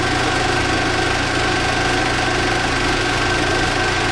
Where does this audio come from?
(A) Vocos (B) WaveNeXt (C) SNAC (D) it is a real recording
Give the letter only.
D